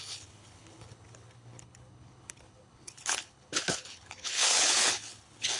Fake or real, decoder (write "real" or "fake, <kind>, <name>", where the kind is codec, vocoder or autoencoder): fake, codec, HILCodec